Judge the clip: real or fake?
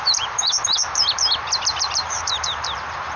fake